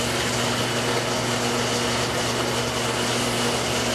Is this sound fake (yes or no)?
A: no